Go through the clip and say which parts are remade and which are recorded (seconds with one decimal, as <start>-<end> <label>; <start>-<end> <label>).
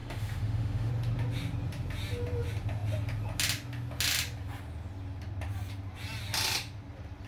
0.0-0.9 remade; 0.9-7.3 recorded